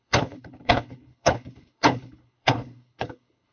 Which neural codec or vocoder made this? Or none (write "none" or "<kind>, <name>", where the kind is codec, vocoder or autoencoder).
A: codec, HILCodec